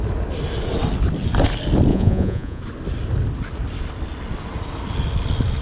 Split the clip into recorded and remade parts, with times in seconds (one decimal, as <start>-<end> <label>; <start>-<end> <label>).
0.0-1.9 recorded; 1.9-2.6 remade; 2.6-5.6 recorded